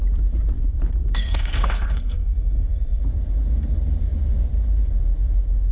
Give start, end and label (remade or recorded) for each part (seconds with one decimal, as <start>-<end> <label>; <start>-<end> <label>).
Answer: 0.0-1.0 recorded; 1.0-3.0 remade; 3.0-5.7 recorded